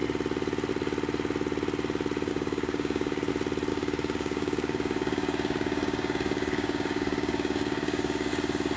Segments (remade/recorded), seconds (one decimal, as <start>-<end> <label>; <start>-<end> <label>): 0.0-2.3 recorded; 2.3-3.3 remade; 3.3-3.7 recorded; 3.7-8.3 remade; 8.3-8.8 recorded